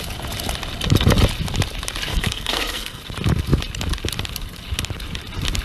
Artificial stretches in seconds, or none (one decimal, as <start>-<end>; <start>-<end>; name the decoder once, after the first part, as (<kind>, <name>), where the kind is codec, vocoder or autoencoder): 2.1-3.0 (codec, SNAC)

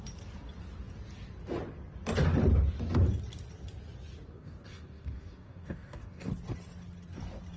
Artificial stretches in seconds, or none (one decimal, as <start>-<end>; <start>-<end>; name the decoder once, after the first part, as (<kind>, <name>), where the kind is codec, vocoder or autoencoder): 4.3-6.3 (codec, DAC)